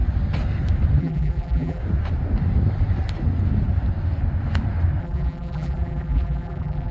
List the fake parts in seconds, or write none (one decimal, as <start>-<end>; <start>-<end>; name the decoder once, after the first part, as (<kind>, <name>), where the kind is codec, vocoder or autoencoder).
1.0-1.8 (vocoder, BigVGAN v2); 5.0-6.9